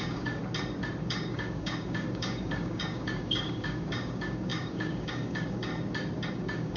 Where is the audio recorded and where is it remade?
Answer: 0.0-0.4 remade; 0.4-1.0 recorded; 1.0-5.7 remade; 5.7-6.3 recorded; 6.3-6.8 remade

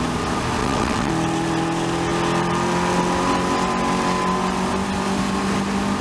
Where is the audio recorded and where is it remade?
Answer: 0.0-0.6 recorded; 0.6-1.1 remade; 1.1-6.0 recorded